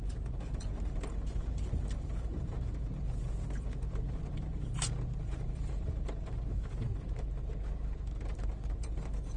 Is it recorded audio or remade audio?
remade